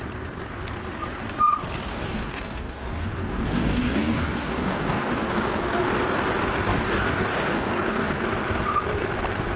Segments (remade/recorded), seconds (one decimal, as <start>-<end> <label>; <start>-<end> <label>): 0.0-1.9 recorded; 1.9-5.3 remade; 5.3-6.7 recorded; 6.7-8.2 remade; 8.2-9.6 recorded